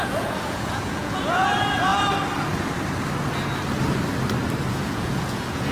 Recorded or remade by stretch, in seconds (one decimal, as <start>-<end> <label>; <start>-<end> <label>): 0.0-1.9 remade; 1.9-4.7 recorded; 4.7-5.7 remade